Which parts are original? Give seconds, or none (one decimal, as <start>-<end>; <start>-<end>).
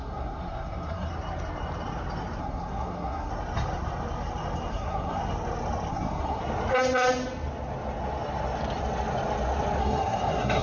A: 1.1-2.4; 3.3-4.7; 5.2-5.9; 6.4-9.8